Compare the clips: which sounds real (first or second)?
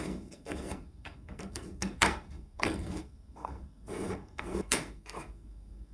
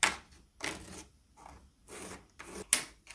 second